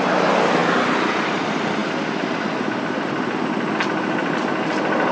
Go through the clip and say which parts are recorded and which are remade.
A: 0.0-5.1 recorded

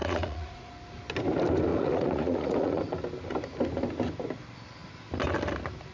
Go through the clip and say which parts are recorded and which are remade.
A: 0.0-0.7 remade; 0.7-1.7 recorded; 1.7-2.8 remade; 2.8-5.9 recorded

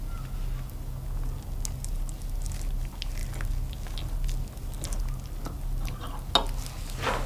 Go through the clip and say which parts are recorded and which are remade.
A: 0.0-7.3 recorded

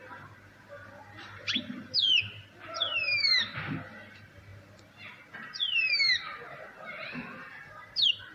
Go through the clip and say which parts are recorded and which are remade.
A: 0.0-8.3 recorded